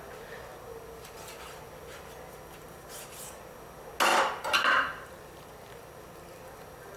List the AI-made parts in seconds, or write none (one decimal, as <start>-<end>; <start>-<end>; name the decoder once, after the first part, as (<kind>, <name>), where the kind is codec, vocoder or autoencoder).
4.1-6.5 (vocoder, BigVGAN v2)

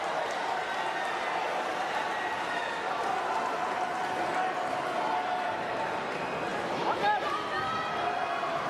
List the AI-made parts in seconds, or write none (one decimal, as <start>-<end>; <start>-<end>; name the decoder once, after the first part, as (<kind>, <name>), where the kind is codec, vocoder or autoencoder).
6.5-8.7 (vocoder, BigVGAN v2)